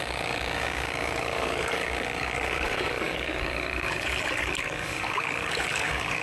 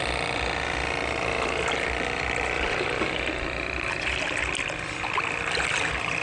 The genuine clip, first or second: second